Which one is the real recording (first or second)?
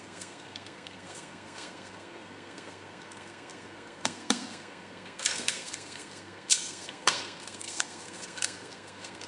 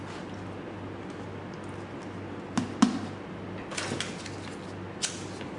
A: second